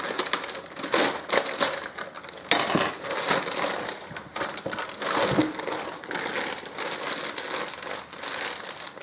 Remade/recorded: recorded